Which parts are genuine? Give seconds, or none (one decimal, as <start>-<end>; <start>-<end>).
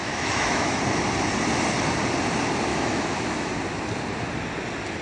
0.8-2.7; 3.5-5.0